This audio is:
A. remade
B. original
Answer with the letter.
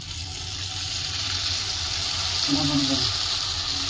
B